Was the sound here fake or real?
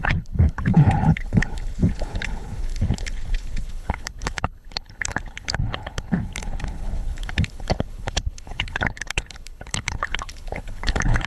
fake